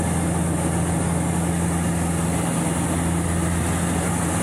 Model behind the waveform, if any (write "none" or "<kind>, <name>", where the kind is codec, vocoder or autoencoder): none